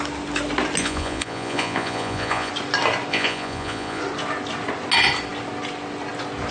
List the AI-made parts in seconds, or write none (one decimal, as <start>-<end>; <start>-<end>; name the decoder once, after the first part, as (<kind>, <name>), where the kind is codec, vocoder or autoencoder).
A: 0.8-2.5 (vocoder, Vocos); 3.1-4.0